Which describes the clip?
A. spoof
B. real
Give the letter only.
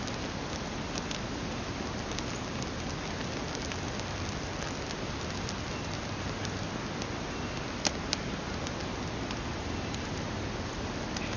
B